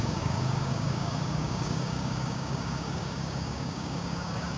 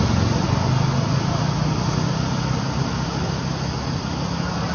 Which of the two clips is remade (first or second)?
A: first